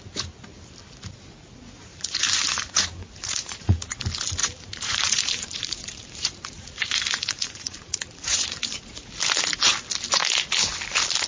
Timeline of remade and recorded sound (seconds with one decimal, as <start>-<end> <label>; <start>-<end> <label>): 0.0-1.9 recorded; 1.9-3.9 remade; 3.9-4.4 recorded; 4.4-9.1 remade; 9.1-11.3 recorded

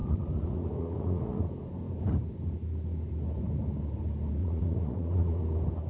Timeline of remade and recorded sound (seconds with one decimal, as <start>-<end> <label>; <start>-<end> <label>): 0.0-1.5 remade; 1.5-4.4 recorded; 4.4-5.4 remade; 5.4-5.9 recorded

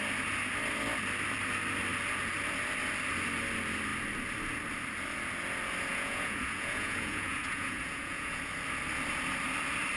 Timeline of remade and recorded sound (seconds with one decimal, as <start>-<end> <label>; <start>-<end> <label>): 0.0-5.9 recorded; 5.9-8.4 remade; 8.4-10.0 recorded

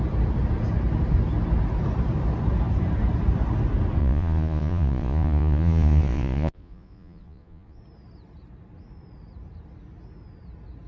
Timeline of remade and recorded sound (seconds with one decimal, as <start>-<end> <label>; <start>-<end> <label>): 0.0-4.0 recorded; 4.0-7.8 remade; 7.8-10.9 recorded

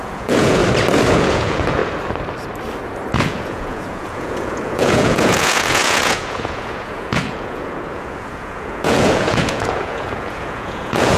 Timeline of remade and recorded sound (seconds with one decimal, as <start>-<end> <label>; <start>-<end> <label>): 0.0-0.6 remade; 0.6-1.1 recorded; 1.1-1.8 remade; 1.8-3.2 recorded; 3.2-11.2 remade

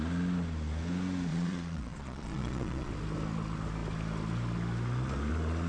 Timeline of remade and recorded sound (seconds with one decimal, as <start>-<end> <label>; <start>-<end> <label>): 0.0-1.3 recorded; 1.3-2.9 remade; 2.9-5.7 recorded